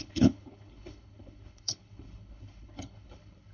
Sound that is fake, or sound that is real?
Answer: fake